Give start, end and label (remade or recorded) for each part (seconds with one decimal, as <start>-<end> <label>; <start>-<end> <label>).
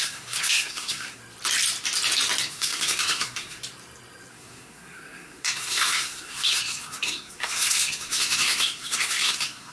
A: 0.0-1.2 remade; 1.2-2.4 recorded; 2.4-3.6 remade; 3.6-4.3 recorded; 4.3-9.7 remade